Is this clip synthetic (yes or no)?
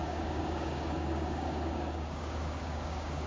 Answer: yes